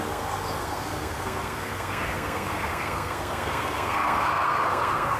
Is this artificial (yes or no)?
yes